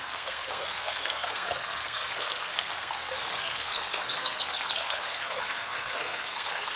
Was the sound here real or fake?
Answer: fake